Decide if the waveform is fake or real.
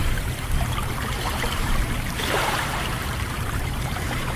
fake